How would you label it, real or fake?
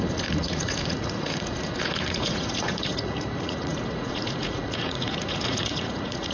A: fake